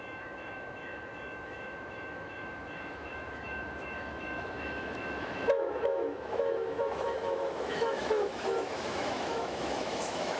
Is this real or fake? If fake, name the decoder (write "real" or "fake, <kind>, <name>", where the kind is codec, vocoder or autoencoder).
fake, autoencoder, DAC-VAE